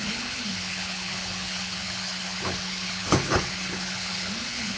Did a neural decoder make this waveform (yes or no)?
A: yes